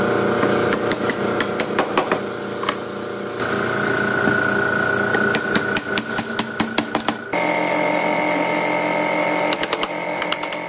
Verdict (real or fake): real